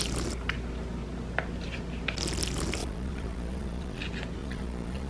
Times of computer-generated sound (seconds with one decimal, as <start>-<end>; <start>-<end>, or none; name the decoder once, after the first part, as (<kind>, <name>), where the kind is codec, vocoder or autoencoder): 2.8-4.0 (vocoder, Vocos); 4.4-5.1